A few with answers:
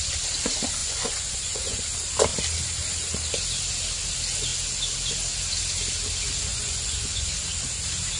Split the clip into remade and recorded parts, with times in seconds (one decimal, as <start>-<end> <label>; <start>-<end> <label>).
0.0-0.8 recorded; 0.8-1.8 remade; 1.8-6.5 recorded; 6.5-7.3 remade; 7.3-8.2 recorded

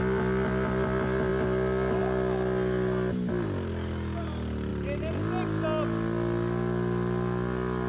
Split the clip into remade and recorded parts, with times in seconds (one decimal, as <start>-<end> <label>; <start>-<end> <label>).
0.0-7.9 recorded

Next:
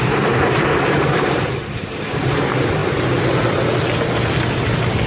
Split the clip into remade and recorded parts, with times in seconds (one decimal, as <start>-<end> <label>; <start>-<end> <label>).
0.0-5.1 recorded

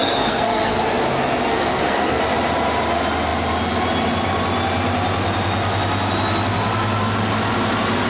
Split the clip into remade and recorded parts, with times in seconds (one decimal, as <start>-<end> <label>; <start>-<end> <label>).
0.0-0.8 remade; 0.8-1.5 recorded; 1.5-2.2 remade; 2.2-8.1 recorded

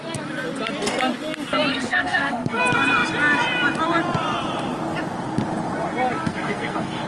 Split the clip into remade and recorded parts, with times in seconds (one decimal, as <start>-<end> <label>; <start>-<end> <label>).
0.0-1.7 recorded; 1.7-2.6 remade; 2.6-6.2 recorded; 6.2-7.1 remade

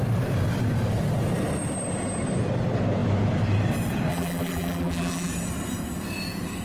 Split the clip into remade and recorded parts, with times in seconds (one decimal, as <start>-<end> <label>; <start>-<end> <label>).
0.0-4.1 recorded; 4.1-5.3 remade; 5.3-6.6 recorded